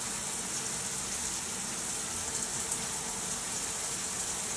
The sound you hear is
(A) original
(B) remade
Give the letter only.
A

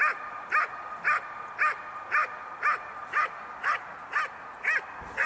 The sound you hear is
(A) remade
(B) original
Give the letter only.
B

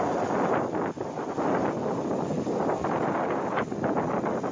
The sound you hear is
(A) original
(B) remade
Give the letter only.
A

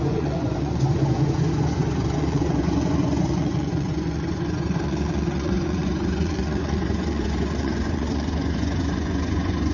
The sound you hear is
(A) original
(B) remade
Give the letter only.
B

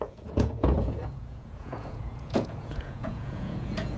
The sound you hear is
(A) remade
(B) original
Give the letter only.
A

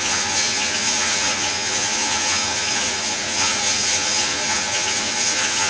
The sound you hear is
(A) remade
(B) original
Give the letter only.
A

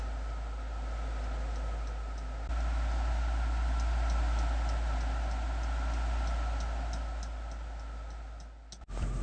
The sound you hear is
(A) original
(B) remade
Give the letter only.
A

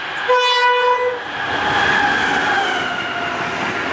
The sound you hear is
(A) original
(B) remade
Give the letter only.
A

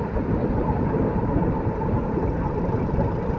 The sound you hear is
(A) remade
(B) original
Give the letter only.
B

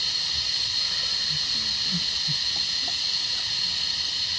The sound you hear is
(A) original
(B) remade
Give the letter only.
A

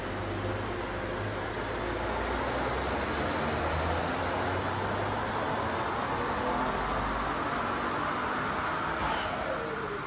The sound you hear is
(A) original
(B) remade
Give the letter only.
A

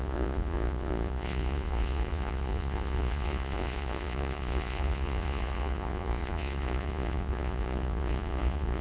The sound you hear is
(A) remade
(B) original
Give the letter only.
A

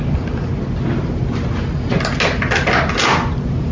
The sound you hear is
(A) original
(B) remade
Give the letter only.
A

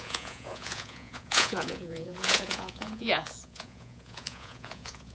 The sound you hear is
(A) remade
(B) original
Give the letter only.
A